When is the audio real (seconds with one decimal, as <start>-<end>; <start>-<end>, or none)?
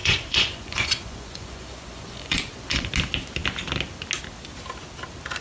2.9-5.4